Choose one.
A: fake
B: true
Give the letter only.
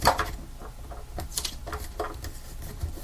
B